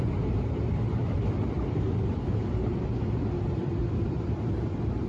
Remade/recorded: remade